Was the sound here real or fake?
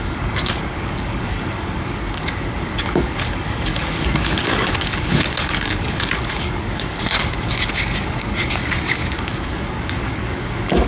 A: fake